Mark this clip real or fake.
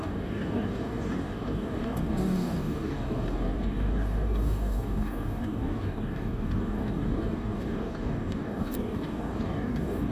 fake